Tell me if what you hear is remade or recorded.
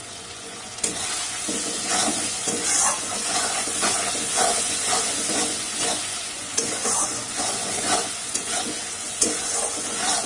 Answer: remade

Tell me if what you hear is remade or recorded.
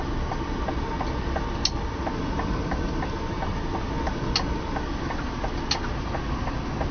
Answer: recorded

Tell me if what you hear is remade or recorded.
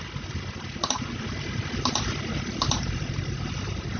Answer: recorded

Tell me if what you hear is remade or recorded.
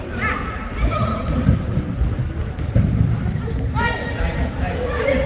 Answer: recorded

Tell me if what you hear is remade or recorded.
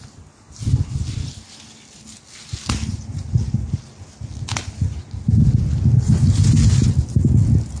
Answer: recorded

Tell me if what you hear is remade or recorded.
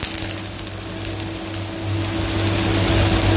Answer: recorded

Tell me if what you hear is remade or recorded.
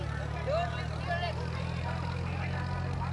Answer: recorded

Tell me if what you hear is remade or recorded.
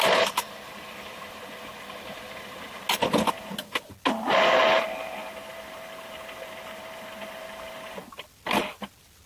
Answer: recorded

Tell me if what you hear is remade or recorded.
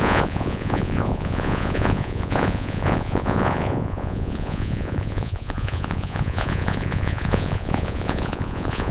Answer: remade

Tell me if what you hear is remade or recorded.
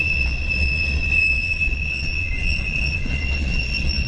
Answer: remade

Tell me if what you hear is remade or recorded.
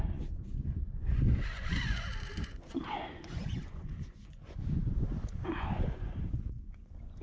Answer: remade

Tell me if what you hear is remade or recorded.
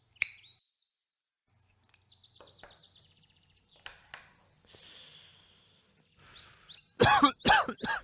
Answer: recorded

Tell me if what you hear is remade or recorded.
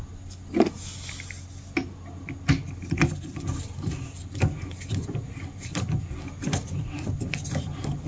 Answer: recorded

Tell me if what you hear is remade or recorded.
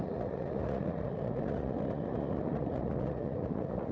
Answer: remade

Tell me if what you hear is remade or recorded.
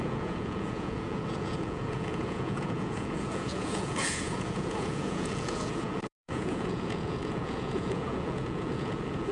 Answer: remade